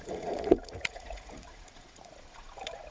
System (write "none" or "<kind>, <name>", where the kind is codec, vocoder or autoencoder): vocoder, Vocos